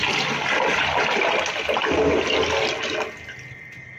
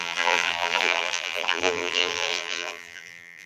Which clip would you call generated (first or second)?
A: second